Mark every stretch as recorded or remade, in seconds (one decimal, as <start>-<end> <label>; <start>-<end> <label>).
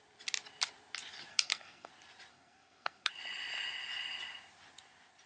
0.0-1.3 recorded; 1.3-1.9 remade; 1.9-2.3 recorded; 2.3-3.1 remade; 3.1-5.3 recorded